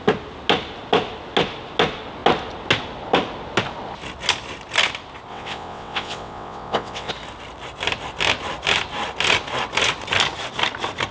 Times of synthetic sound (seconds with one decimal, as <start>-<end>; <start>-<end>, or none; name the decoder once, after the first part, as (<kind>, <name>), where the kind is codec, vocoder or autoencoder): 5.3-7.1 (vocoder, WaveNeXt)